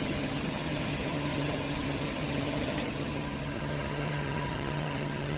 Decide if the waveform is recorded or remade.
remade